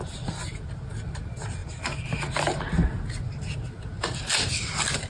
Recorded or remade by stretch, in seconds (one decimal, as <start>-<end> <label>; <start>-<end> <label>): 0.0-5.1 recorded